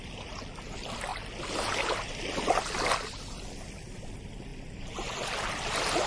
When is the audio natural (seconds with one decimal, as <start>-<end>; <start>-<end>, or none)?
0.0-6.1